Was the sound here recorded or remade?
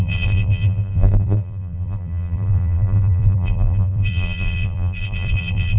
remade